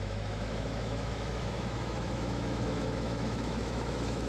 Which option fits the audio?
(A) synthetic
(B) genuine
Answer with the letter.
A